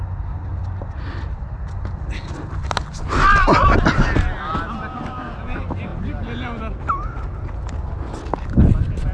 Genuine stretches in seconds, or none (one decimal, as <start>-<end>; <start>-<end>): 0.0-9.1